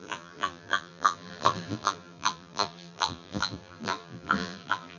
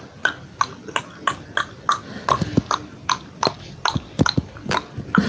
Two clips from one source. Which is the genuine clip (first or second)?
second